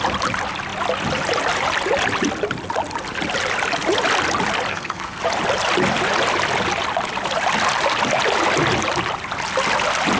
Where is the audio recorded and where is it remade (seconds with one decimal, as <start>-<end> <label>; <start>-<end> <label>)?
0.0-4.7 recorded; 4.7-5.2 remade; 5.2-10.2 recorded